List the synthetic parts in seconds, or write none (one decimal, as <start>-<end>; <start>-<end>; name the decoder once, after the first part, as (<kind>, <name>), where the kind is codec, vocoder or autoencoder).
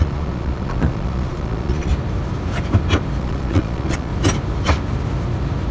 0.0-1.9 (vocoder, Vocos); 3.2-4.1